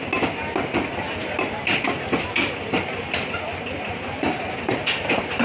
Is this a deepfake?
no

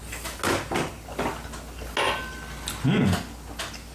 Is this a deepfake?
no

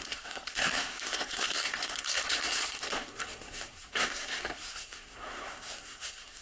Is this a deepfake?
yes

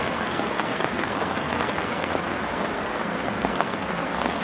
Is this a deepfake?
yes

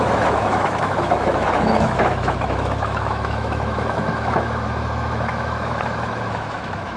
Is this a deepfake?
yes